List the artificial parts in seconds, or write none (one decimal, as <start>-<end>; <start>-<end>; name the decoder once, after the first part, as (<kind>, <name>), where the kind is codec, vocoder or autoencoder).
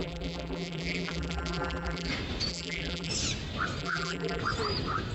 0.0-2.1 (vocoder, BigVGAN v2); 2.5-3.1; 3.8-4.4